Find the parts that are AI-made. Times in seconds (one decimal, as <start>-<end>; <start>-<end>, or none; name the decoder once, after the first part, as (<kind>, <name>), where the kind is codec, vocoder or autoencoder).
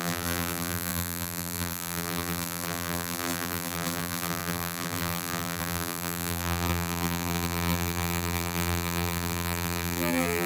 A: 0.0-10.5 (vocoder, BigVGAN v2)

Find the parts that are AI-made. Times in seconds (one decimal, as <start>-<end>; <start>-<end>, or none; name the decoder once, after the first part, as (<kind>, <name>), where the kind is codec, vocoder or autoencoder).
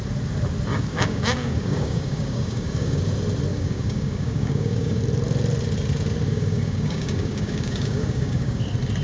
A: 0.7-3.0 (codec, DAC); 3.5-5.0; 6.3-8.6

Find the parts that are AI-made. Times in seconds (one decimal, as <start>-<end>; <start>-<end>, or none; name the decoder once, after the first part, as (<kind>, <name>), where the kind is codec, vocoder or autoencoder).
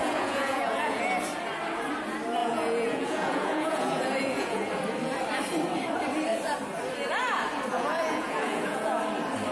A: 0.0-1.0 (vocoder, Vocos); 2.4-4.7; 7.7-9.0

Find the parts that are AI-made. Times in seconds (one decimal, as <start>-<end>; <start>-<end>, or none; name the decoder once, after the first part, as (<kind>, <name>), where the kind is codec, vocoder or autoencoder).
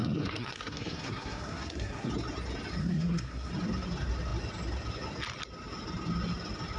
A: 0.0-2.1 (codec, SNAC); 2.8-3.5